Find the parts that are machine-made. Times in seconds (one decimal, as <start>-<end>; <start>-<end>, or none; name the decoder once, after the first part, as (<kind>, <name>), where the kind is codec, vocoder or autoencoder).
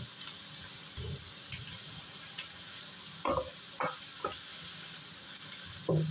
1.7-2.8 (vocoder, Vocos); 4.5-5.0